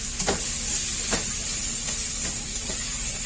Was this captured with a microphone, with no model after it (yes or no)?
no